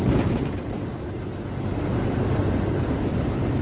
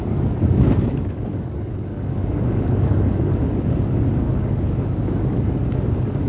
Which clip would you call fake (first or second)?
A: second